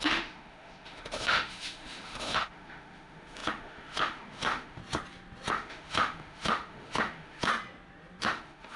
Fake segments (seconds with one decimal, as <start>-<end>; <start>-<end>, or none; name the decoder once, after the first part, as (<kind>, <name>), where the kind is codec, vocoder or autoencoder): 0.0-4.8 (autoencoder, DAC-VAE); 5.5-7.5; 8.2-8.8